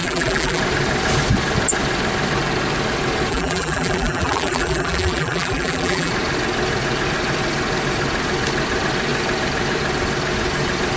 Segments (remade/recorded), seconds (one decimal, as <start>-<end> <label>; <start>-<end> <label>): 0.0-0.6 remade; 0.6-3.3 recorded; 3.3-6.1 remade; 6.1-11.0 recorded